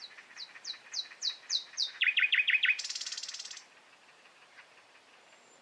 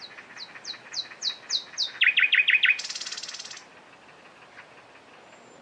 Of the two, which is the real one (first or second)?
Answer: second